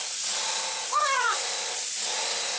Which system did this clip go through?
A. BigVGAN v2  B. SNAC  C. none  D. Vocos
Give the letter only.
C